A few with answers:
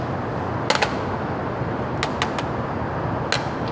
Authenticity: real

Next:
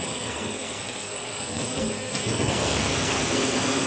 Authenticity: fake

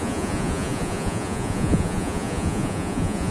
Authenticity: fake